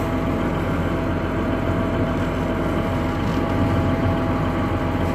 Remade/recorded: recorded